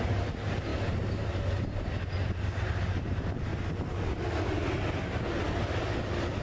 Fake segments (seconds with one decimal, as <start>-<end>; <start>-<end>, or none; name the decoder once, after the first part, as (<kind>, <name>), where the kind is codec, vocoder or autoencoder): 0.0-3.5 (vocoder, BigVGAN v2)